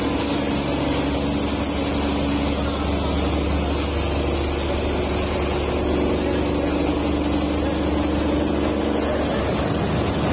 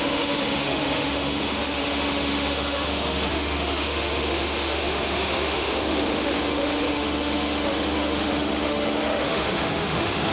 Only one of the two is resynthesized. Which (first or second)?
second